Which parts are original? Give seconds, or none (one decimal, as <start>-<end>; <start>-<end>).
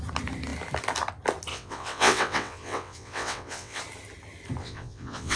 0.0-1.5; 3.8-4.6